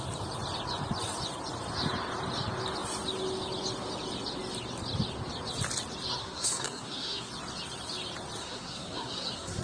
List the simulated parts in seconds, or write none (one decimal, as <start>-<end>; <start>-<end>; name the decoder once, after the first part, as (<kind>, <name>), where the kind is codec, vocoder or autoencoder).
6.2-7.3 (codec, SNAC); 8.4-9.6